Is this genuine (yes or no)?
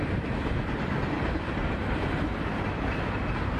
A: yes